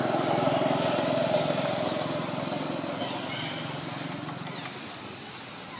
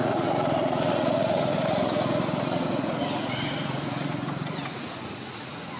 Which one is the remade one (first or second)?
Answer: second